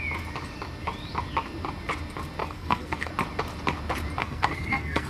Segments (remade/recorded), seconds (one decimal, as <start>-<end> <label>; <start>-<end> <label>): 0.0-2.4 recorded; 2.4-3.1 remade; 3.1-4.2 recorded; 4.2-5.1 remade